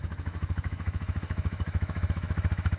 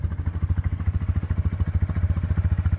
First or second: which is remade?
first